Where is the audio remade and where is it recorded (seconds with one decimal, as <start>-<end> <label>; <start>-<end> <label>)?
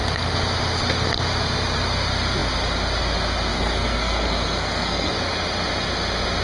0.0-3.5 recorded; 3.5-5.1 remade; 5.1-6.4 recorded